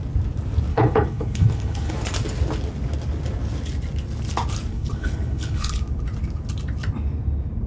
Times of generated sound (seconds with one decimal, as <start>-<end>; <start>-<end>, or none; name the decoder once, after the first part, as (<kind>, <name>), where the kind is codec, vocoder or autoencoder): 0.7-1.9 (codec, HILCodec); 4.7-5.8